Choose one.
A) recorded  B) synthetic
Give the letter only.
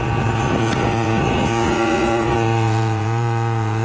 B